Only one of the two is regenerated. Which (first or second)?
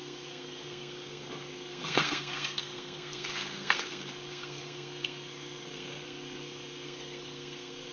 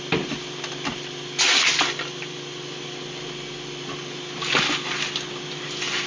first